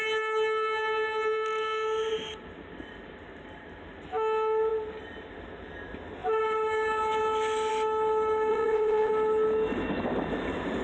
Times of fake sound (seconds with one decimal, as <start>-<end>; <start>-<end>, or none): 8.5-9.1